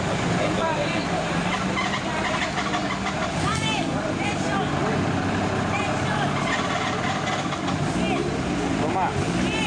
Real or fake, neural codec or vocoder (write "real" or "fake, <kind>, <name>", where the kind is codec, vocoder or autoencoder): real